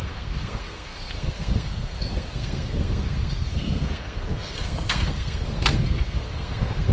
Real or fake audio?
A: fake